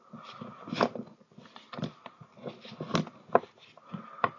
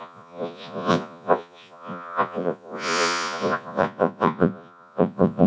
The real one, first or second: first